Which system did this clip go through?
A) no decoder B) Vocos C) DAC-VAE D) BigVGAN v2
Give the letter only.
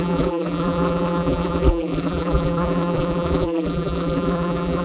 D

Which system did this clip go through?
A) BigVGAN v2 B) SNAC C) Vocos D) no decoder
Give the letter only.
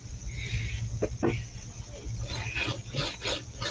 D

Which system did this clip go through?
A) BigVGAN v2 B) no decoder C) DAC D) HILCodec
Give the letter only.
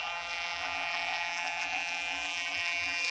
A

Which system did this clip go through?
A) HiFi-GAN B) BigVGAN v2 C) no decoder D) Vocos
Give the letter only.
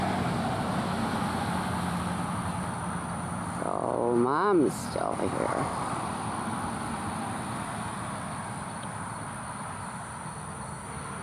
C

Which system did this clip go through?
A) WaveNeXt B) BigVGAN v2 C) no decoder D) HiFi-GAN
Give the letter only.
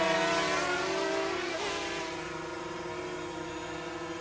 C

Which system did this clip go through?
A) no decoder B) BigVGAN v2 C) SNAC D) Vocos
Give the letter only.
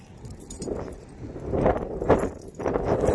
B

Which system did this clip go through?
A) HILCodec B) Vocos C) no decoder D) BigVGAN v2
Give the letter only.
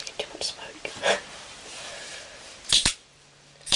D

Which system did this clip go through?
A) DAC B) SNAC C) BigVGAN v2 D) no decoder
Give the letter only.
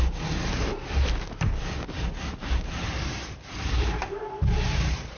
C